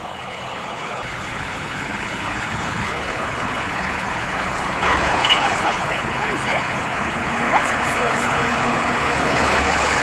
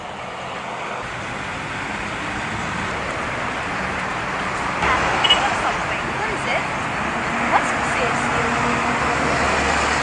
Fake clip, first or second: first